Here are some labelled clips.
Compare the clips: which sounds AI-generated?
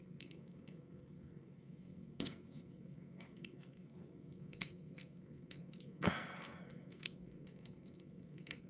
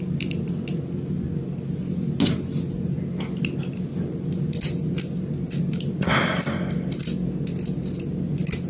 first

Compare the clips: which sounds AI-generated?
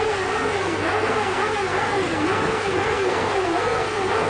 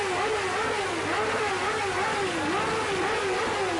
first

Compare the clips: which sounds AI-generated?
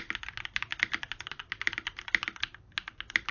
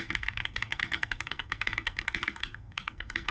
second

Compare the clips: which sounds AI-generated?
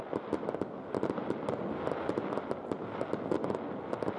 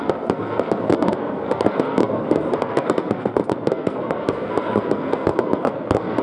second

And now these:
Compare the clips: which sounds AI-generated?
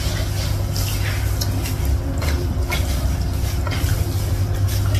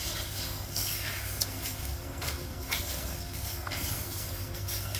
second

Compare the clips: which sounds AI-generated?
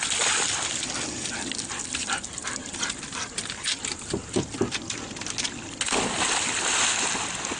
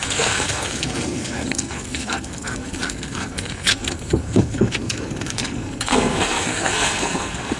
second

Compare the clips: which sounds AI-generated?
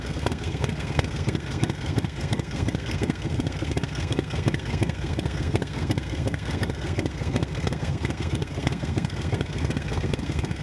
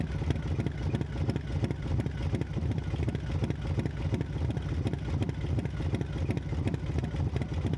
first